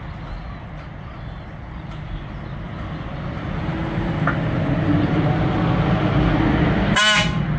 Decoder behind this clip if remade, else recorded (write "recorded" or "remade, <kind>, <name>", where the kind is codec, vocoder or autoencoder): recorded